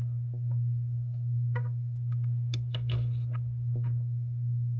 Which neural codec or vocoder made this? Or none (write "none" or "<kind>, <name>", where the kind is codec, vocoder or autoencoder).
codec, SNAC